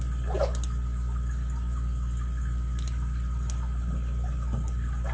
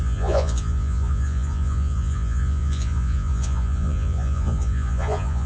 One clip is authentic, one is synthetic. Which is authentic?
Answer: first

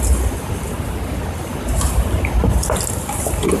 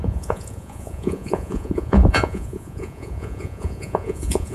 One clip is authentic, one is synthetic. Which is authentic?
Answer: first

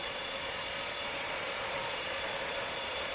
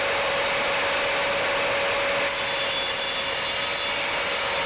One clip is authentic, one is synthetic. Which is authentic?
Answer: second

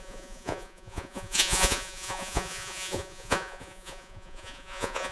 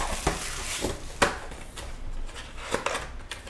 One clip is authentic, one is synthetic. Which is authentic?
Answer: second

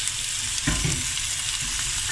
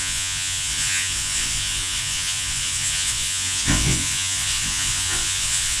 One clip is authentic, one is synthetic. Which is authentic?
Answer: first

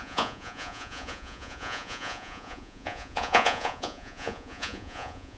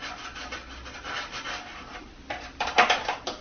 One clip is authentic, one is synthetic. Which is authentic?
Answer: second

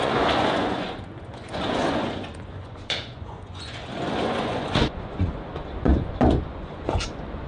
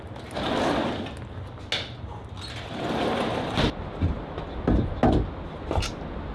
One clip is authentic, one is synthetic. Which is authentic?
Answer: second